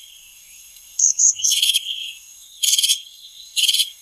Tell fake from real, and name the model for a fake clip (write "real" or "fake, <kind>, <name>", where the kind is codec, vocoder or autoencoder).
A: fake, codec, SNAC